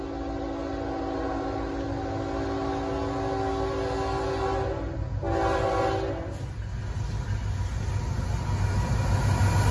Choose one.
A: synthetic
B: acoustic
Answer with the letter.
B